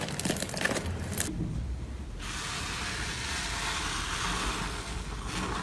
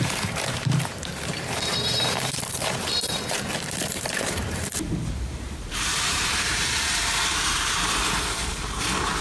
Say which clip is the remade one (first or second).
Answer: second